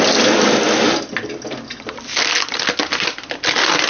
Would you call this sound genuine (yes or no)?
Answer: yes